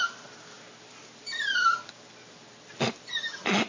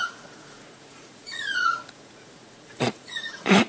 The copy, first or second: second